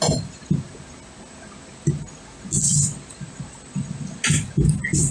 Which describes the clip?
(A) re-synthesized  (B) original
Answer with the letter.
B